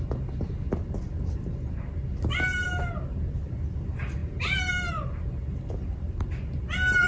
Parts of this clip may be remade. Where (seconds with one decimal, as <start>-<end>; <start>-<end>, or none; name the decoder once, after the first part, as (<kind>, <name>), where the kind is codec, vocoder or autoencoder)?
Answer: none